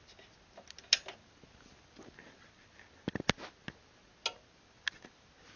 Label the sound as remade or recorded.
recorded